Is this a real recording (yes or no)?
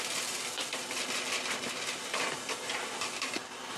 yes